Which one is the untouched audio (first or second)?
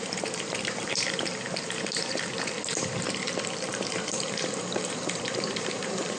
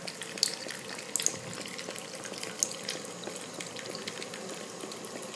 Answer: second